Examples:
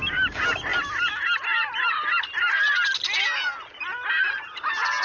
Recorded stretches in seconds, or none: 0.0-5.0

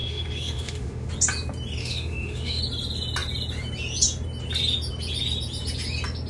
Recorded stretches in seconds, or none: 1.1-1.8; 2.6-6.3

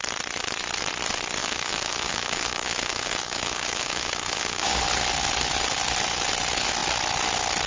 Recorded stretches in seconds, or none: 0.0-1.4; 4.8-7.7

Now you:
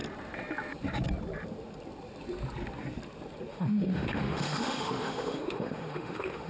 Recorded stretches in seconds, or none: 0.0-3.5

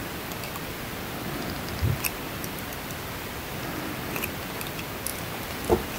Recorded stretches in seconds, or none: 0.0-6.0

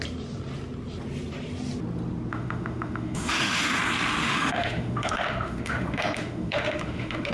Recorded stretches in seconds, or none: 0.0-2.3; 3.8-4.2

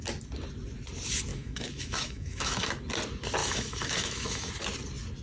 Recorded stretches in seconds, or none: 0.0-1.3; 2.7-3.4; 4.5-5.2

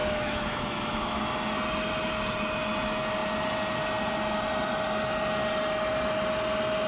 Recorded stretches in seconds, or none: 1.2-6.9